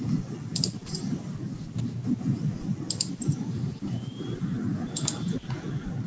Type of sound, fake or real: real